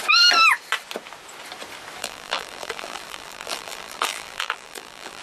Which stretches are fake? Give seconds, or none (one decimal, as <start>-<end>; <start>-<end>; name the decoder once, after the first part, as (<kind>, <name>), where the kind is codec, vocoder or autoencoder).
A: 2.0-5.2 (vocoder, BigVGAN v2)